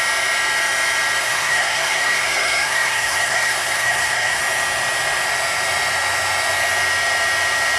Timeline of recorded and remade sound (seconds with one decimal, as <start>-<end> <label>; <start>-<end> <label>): 0.0-1.2 recorded; 1.2-4.4 remade; 4.4-7.8 recorded